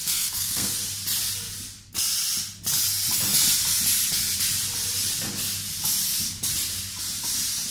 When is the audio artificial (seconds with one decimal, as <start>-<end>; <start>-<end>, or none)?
0.0-0.7